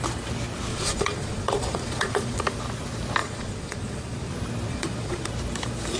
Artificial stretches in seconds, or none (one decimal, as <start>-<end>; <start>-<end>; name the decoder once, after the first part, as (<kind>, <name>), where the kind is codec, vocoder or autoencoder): 0.7-2.4 (vocoder, Vocos); 3.2-4.3; 4.7-5.3